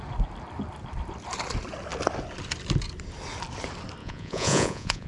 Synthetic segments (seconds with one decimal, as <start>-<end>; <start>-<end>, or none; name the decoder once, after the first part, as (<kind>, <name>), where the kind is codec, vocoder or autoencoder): 4.0-5.1 (vocoder, Vocos)